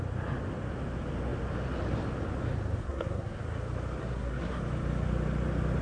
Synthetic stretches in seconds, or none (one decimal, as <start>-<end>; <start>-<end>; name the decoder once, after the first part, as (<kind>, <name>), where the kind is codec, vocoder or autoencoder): 2.8-3.4 (codec, SNAC); 4.0-4.6